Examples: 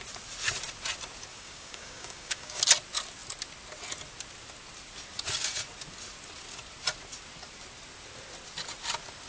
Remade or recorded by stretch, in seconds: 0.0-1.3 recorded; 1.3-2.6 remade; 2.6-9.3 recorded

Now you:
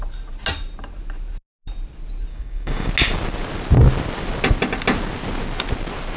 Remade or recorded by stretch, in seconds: 0.0-2.3 recorded; 2.3-2.9 remade; 2.9-6.2 recorded

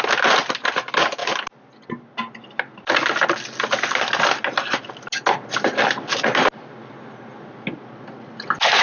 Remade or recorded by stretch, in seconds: 0.0-8.8 recorded

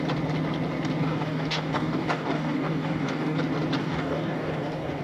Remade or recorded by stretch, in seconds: 0.0-1.0 recorded; 1.0-3.4 remade; 3.4-3.8 recorded; 3.8-5.0 remade

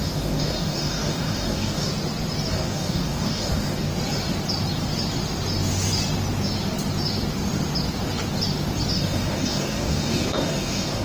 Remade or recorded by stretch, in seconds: 0.0-1.9 remade; 1.9-2.5 recorded; 2.5-3.9 remade; 3.9-8.9 recorded; 8.9-11.0 remade

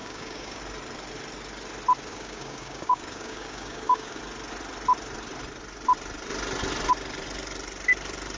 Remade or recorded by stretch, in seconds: 0.0-0.6 remade; 0.6-2.1 recorded; 2.1-4.2 remade; 4.2-8.4 recorded

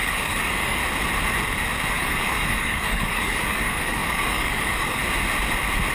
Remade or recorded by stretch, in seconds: 0.0-0.8 remade; 0.8-1.9 recorded; 1.9-5.0 remade; 5.0-5.9 recorded

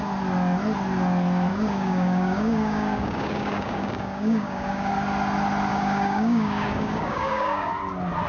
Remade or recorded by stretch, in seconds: 0.0-1.5 recorded; 1.5-4.9 remade; 4.9-5.7 recorded; 5.7-7.7 remade; 7.7-8.3 recorded